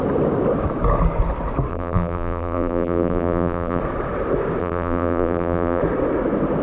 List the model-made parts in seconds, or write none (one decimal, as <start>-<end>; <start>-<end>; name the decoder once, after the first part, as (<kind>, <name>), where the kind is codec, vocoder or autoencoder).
1.7-3.8 (vocoder, BigVGAN v2); 4.6-5.8